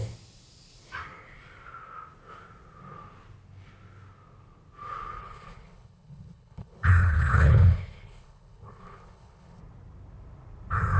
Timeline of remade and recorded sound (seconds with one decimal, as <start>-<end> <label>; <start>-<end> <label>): 0.0-5.2 recorded; 5.2-9.6 remade; 9.6-11.0 recorded

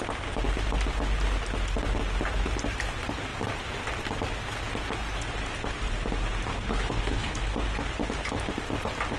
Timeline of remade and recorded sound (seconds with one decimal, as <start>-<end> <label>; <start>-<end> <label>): 0.0-6.5 recorded; 6.5-7.4 remade; 7.4-9.2 recorded

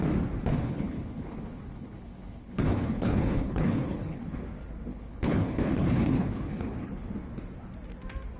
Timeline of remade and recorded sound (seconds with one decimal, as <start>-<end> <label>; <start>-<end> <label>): 0.0-0.5 recorded; 0.5-4.4 remade; 4.4-4.9 recorded; 4.9-7.1 remade; 7.1-8.4 recorded

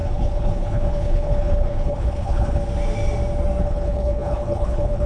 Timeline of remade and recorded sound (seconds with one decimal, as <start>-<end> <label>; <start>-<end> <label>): 0.0-2.6 remade; 2.6-3.6 recorded; 3.6-5.1 remade

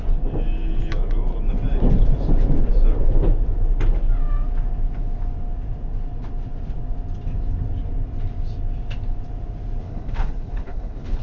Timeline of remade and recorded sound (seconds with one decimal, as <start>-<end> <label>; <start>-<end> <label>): 0.0-9.8 recorded; 9.8-11.2 remade

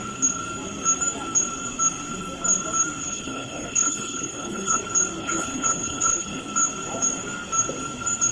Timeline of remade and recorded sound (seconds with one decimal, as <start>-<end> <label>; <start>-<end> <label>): 0.0-3.0 recorded; 3.0-4.8 remade; 4.8-5.2 recorded; 5.2-6.4 remade; 6.4-8.3 recorded